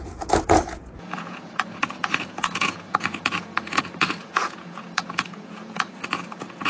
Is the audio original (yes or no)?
no